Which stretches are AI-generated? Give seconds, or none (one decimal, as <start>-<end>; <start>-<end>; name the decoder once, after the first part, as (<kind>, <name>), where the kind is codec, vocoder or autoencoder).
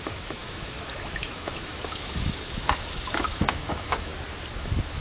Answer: 0.0-4.1 (autoencoder, DAC-VAE); 4.6-5.0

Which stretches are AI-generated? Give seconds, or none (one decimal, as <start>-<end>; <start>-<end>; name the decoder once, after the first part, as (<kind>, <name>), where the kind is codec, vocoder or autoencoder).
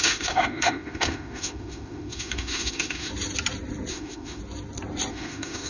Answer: 0.0-3.1 (autoencoder, DAC-VAE); 3.9-4.4; 5.1-5.7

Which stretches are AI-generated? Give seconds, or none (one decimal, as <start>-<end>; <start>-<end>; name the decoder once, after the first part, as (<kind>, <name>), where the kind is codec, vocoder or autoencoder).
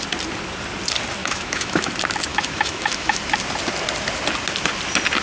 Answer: 1.2-1.9 (autoencoder, DAC-VAE); 2.3-3.2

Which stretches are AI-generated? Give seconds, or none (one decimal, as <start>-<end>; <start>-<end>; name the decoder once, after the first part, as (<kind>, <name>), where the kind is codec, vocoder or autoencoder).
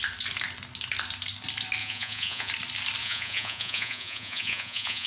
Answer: 1.8-2.5 (vocoder, Vocos); 3.0-5.1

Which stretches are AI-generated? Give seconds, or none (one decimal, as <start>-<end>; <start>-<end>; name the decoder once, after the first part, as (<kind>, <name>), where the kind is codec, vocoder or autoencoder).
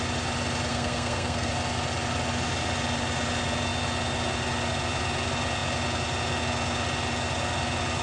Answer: 0.7-1.5 (codec, SNAC)